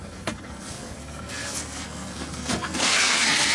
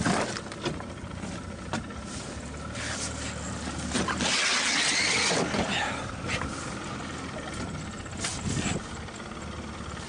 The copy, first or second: first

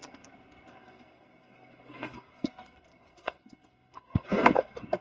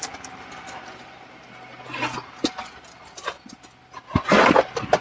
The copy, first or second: first